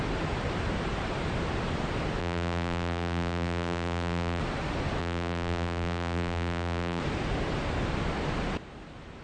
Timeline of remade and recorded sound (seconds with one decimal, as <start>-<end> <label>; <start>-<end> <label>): 0.0-2.2 recorded; 2.2-4.4 remade; 4.4-5.0 recorded; 5.0-7.0 remade; 7.0-9.2 recorded